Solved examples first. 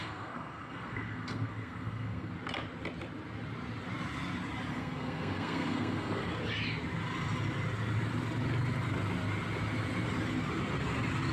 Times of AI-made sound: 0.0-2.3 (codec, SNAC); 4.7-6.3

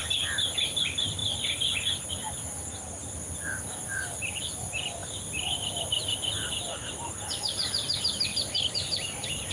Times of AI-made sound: none

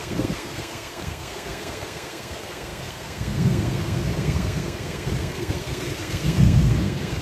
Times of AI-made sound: 0.0-7.2 (codec, SNAC)

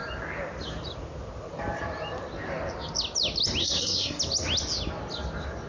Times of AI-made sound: 3.6-4.2 (codec, SNAC)

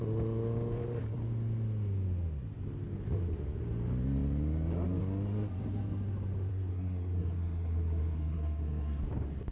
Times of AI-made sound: 6.5-9.0 (codec, SNAC)

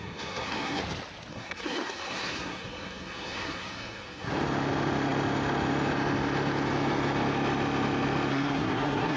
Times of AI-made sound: 0.0-0.8 (codec, SNAC); 1.3-4.3; 8.3-9.2

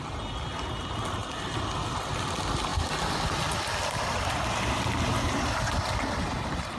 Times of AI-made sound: none